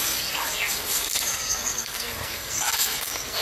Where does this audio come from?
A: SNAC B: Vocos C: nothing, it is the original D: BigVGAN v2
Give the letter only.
A